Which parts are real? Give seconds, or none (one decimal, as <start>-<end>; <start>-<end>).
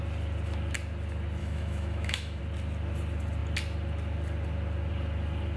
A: 0.0-1.4; 2.4-5.6